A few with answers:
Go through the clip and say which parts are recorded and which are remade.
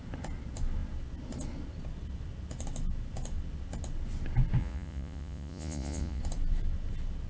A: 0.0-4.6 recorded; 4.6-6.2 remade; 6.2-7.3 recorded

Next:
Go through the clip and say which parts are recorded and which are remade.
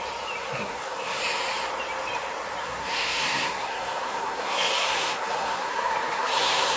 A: 0.0-0.4 recorded; 0.4-1.2 remade; 1.2-2.6 recorded; 2.6-6.8 remade